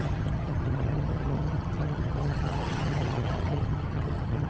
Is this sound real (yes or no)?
no